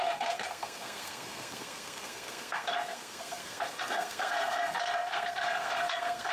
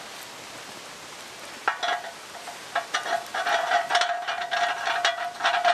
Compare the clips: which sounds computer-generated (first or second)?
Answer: first